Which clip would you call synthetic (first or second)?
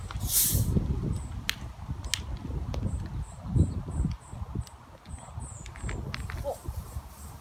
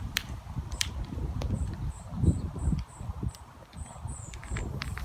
second